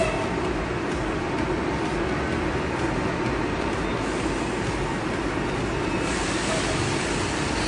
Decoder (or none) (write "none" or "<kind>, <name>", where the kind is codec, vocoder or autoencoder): none